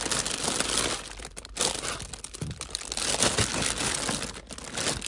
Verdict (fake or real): real